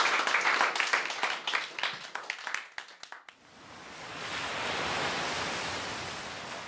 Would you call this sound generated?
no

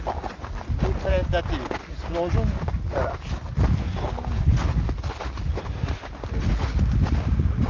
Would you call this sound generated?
no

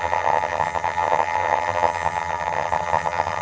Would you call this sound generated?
yes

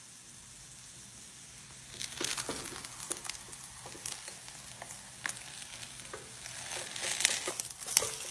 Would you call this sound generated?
no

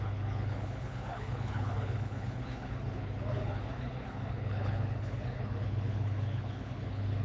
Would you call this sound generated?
yes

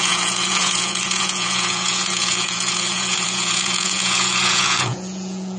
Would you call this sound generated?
yes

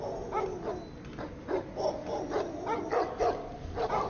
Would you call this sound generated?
no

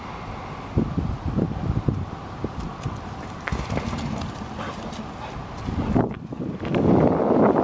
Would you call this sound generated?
no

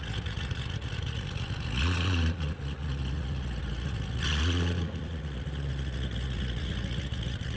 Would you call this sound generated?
yes